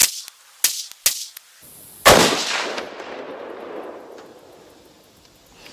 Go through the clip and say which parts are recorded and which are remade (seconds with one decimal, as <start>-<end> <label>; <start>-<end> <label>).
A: 0.0-5.7 recorded